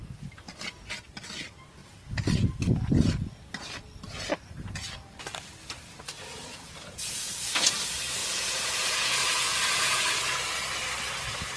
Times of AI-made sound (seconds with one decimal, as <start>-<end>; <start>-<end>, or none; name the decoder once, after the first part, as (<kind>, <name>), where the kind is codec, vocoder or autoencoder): 6.3-7.7 (vocoder, Vocos); 8.2-10.1